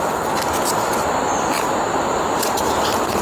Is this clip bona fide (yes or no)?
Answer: yes